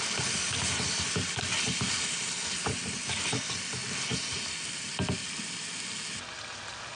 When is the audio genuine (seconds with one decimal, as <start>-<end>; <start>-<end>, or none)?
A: 0.0-7.0